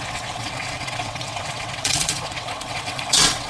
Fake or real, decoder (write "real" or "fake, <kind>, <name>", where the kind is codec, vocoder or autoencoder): fake, vocoder, WaveNeXt